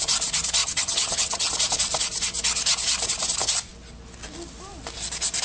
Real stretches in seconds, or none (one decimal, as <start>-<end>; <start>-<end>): 0.0-0.6; 1.5-5.4